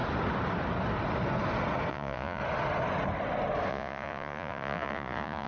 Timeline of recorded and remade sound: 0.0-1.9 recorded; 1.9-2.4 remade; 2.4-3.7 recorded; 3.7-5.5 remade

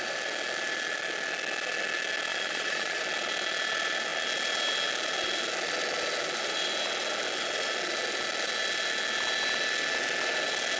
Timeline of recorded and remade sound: 0.0-2.3 recorded; 2.3-3.0 remade; 3.0-10.8 recorded

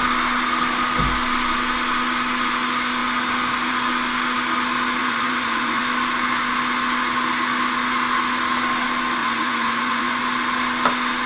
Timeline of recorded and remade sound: 0.0-5.0 recorded; 5.0-5.8 remade; 5.8-9.2 recorded; 9.2-10.2 remade; 10.2-11.3 recorded

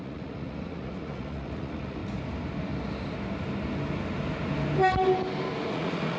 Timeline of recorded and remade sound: 0.0-2.0 remade; 2.0-5.7 recorded; 5.7-6.2 remade

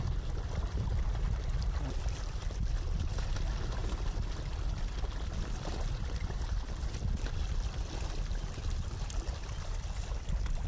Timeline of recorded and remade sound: 0.0-10.7 recorded

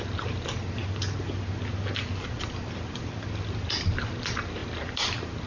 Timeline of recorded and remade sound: 0.0-5.5 recorded